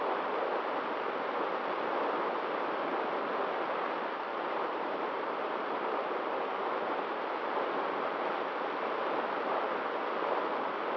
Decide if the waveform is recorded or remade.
recorded